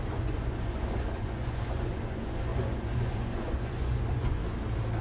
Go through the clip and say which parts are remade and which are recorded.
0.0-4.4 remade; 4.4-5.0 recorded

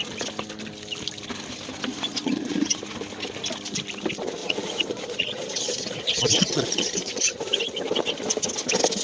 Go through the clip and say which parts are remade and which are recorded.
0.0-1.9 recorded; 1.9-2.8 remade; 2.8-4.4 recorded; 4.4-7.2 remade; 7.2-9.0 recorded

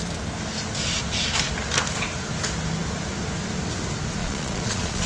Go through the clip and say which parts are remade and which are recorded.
0.0-4.2 recorded; 4.2-5.1 remade

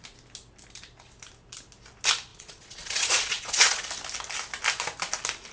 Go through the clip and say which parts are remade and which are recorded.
0.0-2.3 recorded; 2.3-3.8 remade; 3.8-5.5 recorded

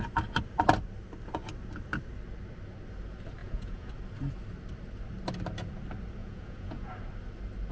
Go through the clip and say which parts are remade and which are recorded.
0.0-3.4 recorded; 3.4-3.9 remade; 3.9-6.2 recorded; 6.2-6.9 remade; 6.9-7.7 recorded

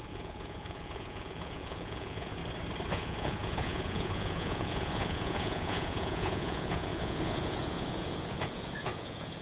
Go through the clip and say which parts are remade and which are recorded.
0.0-2.4 remade; 2.4-2.9 recorded; 2.9-9.4 remade